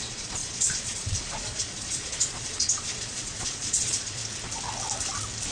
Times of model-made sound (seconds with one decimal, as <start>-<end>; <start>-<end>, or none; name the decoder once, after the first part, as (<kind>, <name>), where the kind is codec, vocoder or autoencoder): 0.0-4.2 (vocoder, Vocos)